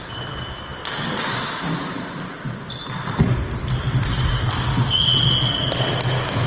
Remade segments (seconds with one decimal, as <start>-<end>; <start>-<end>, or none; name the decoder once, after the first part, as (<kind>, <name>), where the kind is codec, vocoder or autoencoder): none